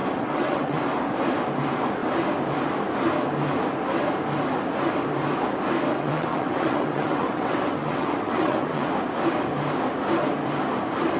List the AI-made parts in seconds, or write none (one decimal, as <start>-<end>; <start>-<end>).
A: 0.0-0.8; 5.9-8.9